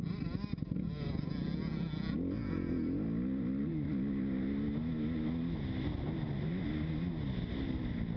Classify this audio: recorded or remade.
recorded